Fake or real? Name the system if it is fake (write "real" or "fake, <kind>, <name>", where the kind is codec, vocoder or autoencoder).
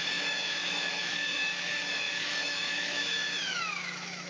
fake, autoencoder, DAC-VAE